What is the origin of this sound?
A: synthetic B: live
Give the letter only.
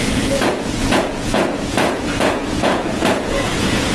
A